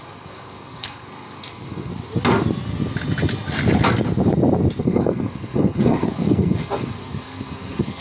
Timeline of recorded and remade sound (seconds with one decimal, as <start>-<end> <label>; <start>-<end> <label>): 0.0-1.9 remade; 1.9-4.8 recorded; 4.8-8.0 remade